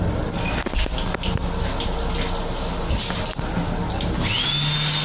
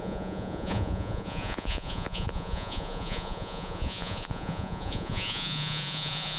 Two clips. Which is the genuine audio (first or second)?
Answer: first